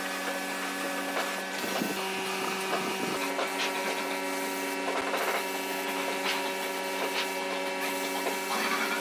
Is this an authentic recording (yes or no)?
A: yes